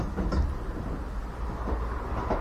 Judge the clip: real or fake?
real